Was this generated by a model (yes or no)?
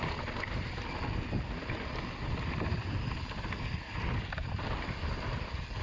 no